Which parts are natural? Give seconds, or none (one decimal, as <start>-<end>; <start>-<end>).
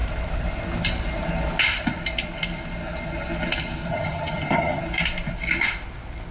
0.0-3.9; 4.8-6.3